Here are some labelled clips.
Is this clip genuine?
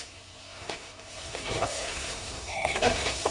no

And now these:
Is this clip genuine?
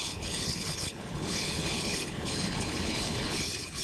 no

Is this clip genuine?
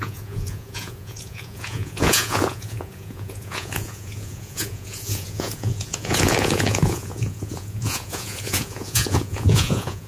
no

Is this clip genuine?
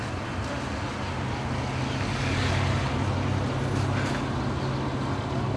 yes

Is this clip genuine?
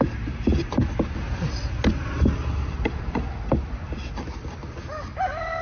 yes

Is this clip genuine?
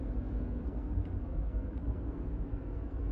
no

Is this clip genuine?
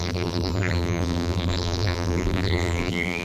no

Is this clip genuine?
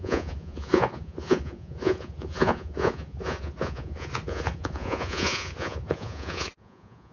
no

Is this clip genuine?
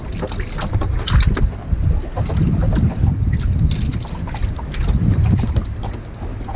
yes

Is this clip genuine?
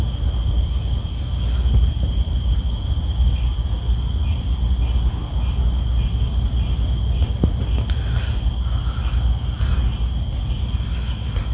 yes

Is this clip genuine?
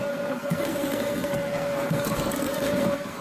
no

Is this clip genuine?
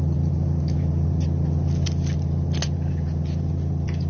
yes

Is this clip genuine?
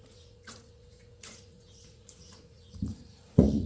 no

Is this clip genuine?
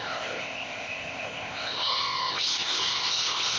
no